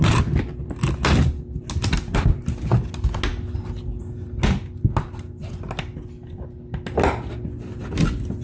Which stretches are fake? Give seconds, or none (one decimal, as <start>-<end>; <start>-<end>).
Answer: none